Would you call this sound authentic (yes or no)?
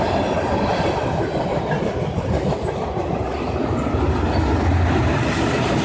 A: yes